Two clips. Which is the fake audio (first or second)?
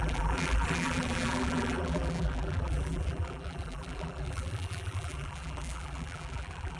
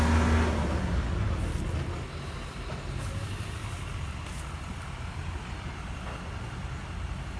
first